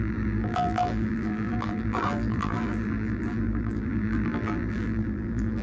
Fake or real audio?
fake